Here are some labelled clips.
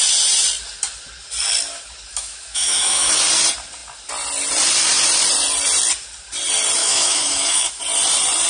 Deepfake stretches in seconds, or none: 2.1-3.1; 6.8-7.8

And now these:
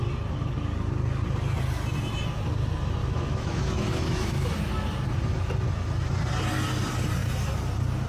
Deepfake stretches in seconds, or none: 3.0-4.5

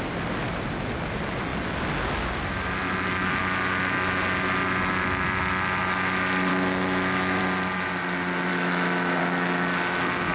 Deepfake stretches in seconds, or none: 6.5-7.4; 8.5-9.2

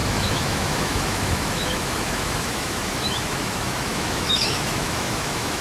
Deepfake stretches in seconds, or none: 0.0-5.6

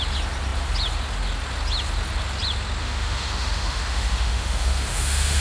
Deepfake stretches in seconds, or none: 2.8-5.4

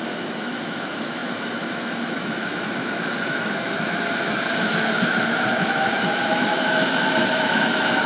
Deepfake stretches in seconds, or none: 0.0-8.1

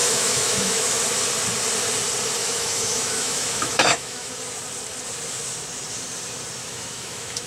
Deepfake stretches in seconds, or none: 0.0-0.9; 2.4-4.3; 6.6-7.5

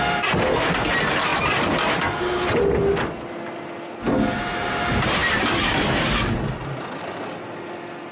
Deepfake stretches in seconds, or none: none